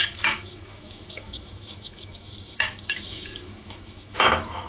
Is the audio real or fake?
fake